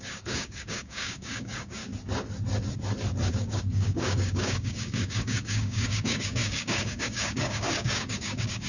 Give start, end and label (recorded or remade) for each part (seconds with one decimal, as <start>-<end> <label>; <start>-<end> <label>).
0.0-1.8 remade; 1.8-3.3 recorded; 3.3-8.7 remade

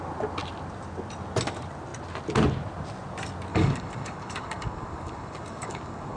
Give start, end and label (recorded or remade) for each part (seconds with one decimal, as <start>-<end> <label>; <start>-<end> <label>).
0.0-3.5 recorded; 3.5-6.2 remade

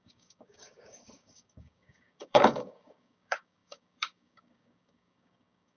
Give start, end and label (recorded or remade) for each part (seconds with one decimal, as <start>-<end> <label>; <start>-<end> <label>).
0.0-5.8 remade

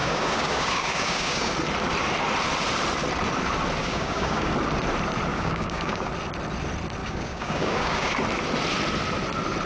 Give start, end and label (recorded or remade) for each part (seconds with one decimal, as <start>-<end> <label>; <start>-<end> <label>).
0.0-1.5 remade; 1.5-3.8 recorded; 3.8-4.5 remade; 4.5-5.3 recorded; 5.3-6.1 remade; 6.1-7.0 recorded; 7.0-8.1 remade; 8.1-9.7 recorded

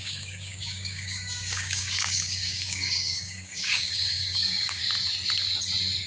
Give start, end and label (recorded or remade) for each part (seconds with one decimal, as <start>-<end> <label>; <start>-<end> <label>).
0.0-4.8 remade; 4.8-6.1 recorded

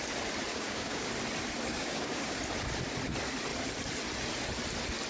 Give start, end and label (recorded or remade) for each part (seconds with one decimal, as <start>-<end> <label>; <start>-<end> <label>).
0.0-0.5 recorded; 0.5-1.1 remade; 1.1-1.7 recorded; 1.7-2.4 remade; 2.4-5.1 recorded

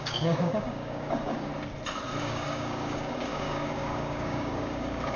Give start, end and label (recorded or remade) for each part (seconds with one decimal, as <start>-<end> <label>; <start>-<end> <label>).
0.0-1.5 remade; 1.5-2.2 recorded; 2.2-5.2 remade